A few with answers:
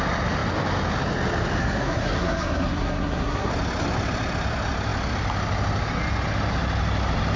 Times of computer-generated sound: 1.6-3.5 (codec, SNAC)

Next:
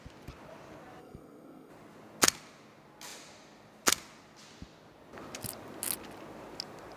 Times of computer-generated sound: 1.0-1.7 (codec, SNAC)

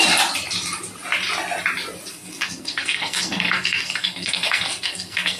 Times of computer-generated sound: 2.1-5.4 (codec, SNAC)

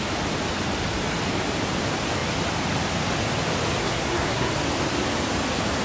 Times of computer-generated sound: 3.8-4.5 (codec, SNAC)

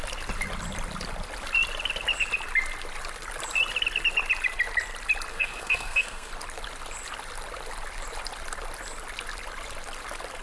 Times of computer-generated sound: 5.3-6.3 (codec, SNAC)

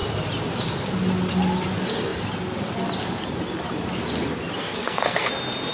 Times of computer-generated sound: 4.6-5.3 (codec, SNAC)